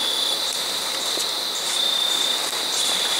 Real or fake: fake